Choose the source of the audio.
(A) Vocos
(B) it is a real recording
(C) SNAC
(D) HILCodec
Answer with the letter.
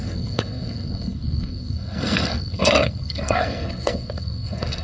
C